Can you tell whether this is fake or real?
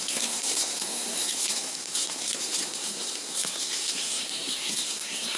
fake